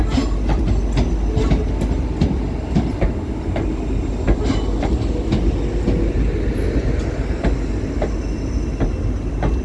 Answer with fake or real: real